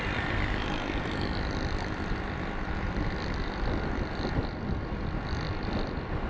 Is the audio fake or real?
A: fake